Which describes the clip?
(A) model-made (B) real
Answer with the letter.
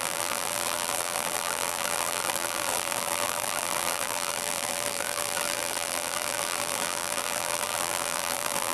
A